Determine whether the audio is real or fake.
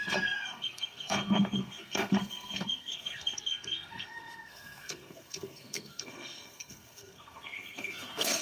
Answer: fake